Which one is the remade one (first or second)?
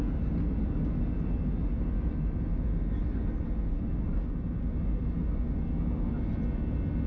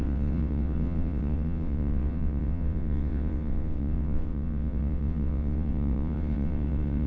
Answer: second